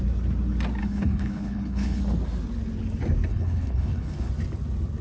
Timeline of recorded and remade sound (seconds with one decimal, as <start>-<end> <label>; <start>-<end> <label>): 0.0-0.8 recorded; 0.8-2.0 remade; 2.0-3.3 recorded; 3.3-4.3 remade; 4.3-5.0 recorded